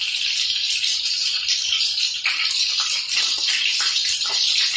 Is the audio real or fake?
real